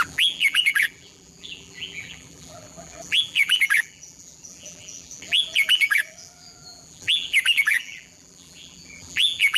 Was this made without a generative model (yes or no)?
no